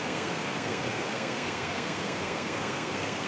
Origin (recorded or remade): remade